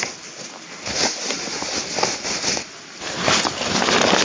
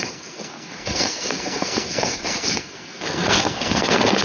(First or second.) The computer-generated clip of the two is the second